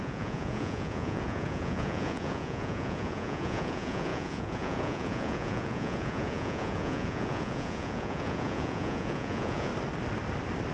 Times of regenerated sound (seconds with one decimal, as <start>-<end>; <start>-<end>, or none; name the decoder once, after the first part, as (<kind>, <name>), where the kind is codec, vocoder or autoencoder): 0.0-9.7 (vocoder, Vocos)

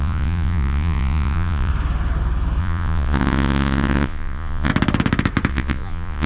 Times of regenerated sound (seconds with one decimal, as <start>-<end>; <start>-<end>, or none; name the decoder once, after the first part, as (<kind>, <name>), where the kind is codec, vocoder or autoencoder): 0.0-1.7 (vocoder, Vocos); 2.6-4.7; 5.5-6.3